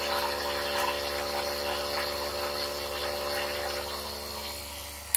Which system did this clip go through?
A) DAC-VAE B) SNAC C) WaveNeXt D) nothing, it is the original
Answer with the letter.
D